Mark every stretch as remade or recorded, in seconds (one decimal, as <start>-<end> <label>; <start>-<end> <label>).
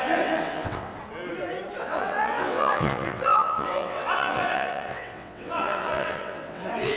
0.0-0.9 remade; 0.9-1.8 recorded; 1.8-7.0 remade